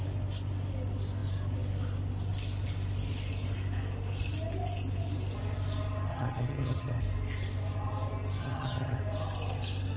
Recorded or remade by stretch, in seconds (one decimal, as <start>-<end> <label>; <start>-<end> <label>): 0.0-6.1 recorded; 6.1-7.0 remade; 7.0-8.4 recorded; 8.4-9.0 remade; 9.0-10.0 recorded